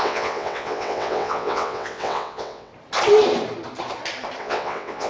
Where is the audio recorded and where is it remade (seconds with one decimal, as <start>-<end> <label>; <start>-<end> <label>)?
0.0-2.7 remade; 2.7-4.4 recorded; 4.4-5.1 remade

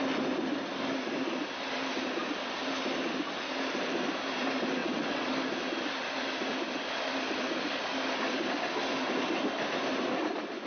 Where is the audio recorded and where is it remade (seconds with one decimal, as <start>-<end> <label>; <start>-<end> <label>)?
0.0-4.8 recorded; 4.8-5.3 remade; 5.3-10.7 recorded

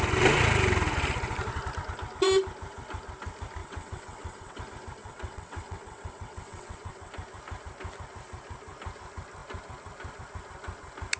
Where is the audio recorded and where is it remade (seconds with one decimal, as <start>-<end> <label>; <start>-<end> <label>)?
0.0-3.6 recorded; 3.6-4.6 remade; 4.6-5.0 recorded; 5.0-7.1 remade; 7.1-11.2 recorded